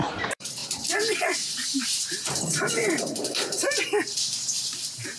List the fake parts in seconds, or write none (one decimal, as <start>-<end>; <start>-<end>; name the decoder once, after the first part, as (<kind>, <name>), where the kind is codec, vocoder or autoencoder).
0.0-5.2 (vocoder, BigVGAN v2)